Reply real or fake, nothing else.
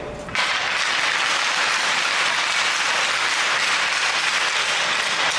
real